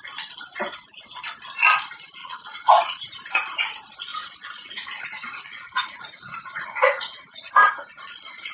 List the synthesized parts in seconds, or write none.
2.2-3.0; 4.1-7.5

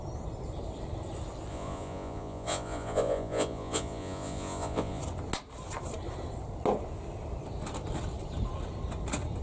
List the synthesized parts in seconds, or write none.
1.5-5.0

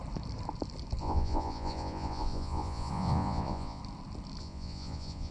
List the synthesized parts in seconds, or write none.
1.0-3.8; 4.4-5.3

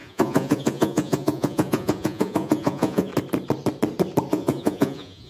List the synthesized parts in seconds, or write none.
0.0-3.1; 4.3-5.3

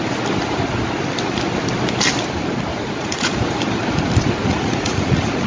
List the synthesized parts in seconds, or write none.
2.7-3.6; 4.4-5.5